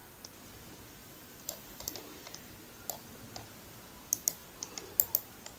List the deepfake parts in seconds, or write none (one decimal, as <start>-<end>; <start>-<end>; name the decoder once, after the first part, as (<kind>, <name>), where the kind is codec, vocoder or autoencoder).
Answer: 1.0-2.5 (vocoder, BigVGAN v2)